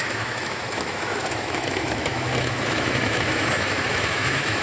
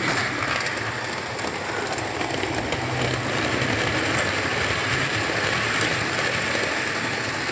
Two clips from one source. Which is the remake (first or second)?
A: first